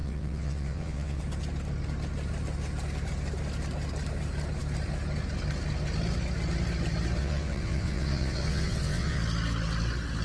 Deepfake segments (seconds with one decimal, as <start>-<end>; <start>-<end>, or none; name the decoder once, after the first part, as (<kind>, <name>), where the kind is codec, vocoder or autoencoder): 0.0-1.2 (vocoder, WaveNeXt); 7.2-9.2